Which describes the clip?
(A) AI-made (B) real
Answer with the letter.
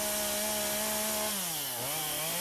B